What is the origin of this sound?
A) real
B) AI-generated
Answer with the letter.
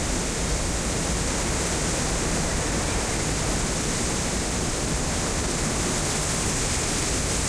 A